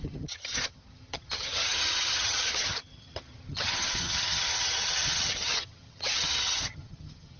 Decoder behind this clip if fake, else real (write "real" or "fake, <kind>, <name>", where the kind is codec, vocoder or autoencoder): fake, vocoder, HiFi-GAN